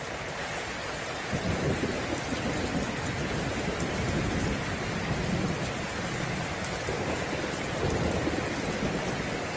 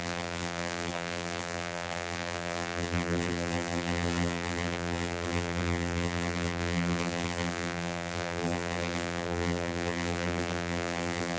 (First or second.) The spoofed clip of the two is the second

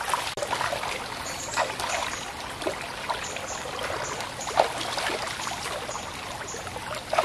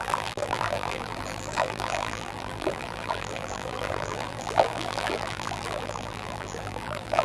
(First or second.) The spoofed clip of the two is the second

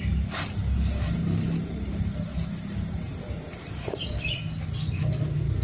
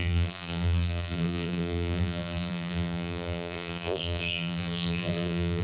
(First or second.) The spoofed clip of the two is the second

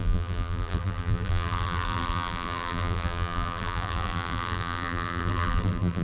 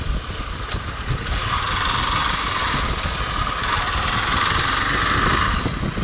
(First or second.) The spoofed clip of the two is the first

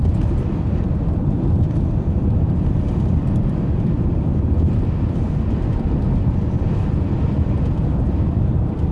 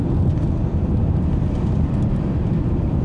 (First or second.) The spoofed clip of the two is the first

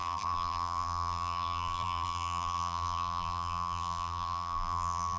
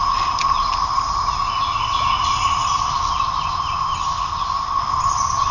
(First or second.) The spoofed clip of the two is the first